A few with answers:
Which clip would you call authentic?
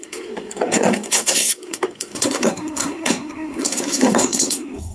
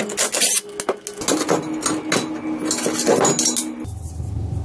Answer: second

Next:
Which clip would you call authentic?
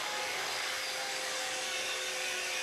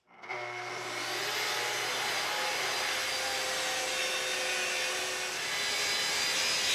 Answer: second